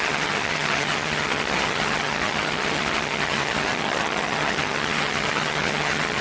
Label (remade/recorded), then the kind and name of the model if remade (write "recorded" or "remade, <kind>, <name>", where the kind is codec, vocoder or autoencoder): remade, vocoder, HiFi-GAN